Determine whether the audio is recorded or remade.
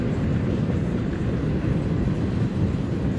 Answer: recorded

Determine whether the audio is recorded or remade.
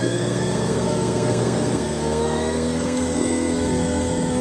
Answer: remade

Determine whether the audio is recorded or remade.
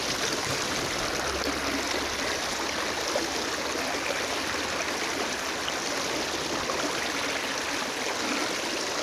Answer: recorded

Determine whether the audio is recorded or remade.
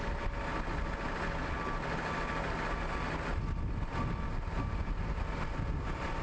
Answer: recorded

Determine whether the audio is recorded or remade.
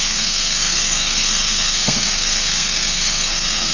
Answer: remade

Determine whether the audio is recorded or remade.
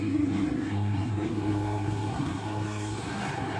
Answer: remade